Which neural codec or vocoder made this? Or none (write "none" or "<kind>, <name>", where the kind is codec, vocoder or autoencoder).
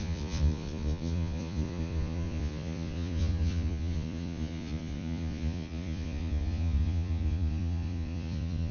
vocoder, Vocos